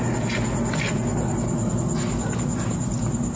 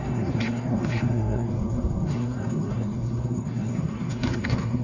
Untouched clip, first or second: first